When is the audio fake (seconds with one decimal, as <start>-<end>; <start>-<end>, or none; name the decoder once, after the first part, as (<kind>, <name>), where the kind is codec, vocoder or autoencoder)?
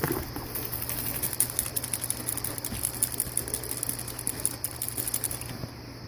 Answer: none